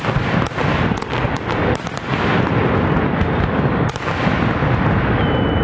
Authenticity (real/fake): real